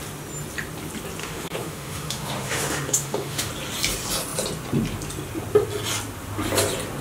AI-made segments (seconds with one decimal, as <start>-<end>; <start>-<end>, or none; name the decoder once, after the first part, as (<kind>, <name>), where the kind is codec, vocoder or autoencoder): 1.2-3.5 (autoencoder, DAC-VAE)

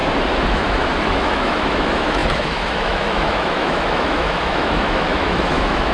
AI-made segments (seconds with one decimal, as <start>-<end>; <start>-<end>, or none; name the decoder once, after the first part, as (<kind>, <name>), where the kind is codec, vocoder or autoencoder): 0.5-5.9 (autoencoder, DAC-VAE)